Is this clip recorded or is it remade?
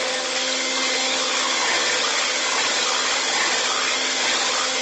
recorded